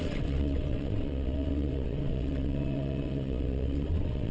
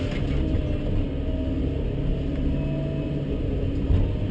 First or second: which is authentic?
second